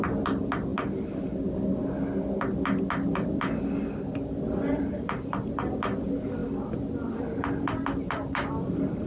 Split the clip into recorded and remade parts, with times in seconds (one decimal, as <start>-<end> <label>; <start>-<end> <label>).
0.0-9.1 recorded